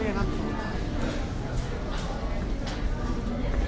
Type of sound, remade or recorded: recorded